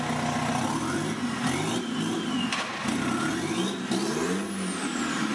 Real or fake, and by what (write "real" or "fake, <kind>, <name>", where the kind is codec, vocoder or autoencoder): real